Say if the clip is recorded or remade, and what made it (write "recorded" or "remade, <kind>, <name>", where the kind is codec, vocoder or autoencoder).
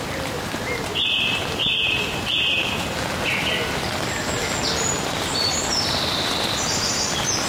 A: recorded